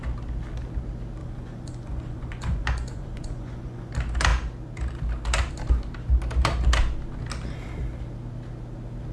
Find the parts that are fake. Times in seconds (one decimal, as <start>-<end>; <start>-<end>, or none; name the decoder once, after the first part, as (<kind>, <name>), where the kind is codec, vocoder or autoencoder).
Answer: 1.2-3.9 (vocoder, Vocos)